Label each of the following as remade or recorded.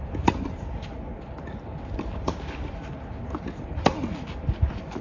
recorded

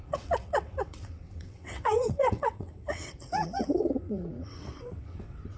remade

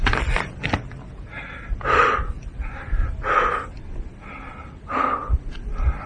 recorded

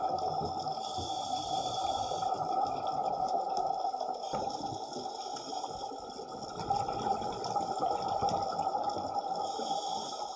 recorded